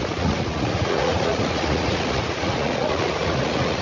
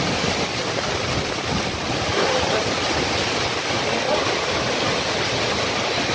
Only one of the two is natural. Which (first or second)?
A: second